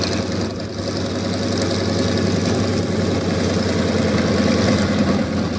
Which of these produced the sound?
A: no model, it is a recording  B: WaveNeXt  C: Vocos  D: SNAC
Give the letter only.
A